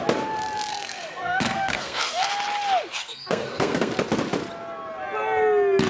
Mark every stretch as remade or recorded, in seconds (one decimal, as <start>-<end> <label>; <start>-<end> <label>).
0.0-0.7 recorded; 0.7-2.3 remade; 2.3-2.9 recorded; 2.9-3.9 remade; 3.9-5.9 recorded